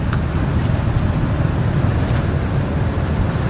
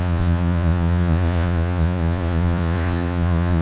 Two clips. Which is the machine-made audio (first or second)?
second